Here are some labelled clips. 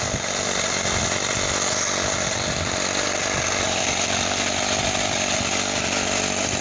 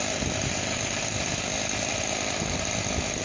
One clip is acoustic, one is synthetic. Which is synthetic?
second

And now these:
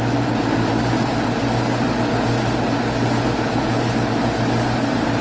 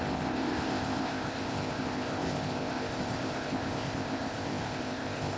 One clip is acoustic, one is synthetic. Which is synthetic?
second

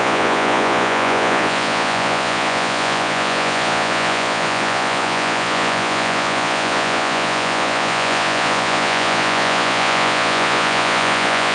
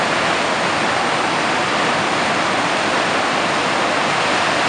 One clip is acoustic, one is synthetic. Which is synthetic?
first